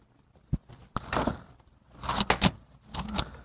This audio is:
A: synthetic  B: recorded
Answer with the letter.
B